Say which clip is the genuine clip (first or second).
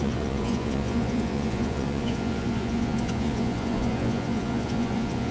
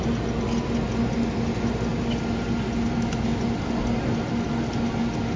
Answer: second